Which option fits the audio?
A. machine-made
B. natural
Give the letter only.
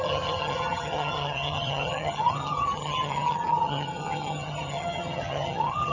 A